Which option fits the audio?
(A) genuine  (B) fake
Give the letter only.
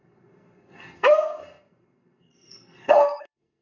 B